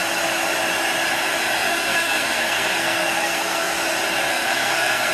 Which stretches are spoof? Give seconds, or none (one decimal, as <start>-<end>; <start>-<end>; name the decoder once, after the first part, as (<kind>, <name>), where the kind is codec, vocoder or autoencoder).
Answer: 1.7-3.7 (codec, SNAC); 4.3-5.1

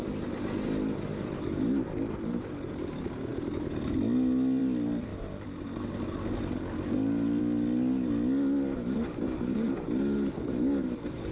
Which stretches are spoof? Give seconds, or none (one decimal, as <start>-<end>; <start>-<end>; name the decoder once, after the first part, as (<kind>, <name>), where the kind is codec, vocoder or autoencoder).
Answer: none

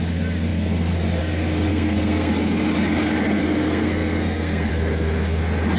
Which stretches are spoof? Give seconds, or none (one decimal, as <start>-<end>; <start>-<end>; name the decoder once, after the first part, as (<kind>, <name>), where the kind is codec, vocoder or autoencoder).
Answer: 1.7-2.3 (codec, SNAC); 3.4-4.7

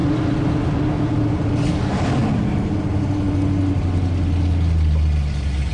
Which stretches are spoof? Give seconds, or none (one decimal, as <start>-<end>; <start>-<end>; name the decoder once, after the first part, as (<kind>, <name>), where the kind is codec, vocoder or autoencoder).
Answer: none

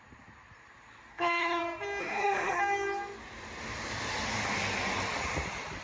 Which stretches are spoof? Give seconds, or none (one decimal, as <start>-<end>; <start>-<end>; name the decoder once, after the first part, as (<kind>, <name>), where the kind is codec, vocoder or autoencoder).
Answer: 1.1-1.6 (codec, SNAC); 2.0-2.6

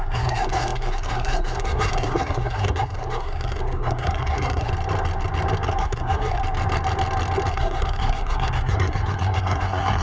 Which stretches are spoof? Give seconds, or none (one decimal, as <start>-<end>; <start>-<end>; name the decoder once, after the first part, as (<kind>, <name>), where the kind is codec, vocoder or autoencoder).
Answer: 0.0-4.7 (codec, SNAC); 5.8-6.4; 7.5-10.0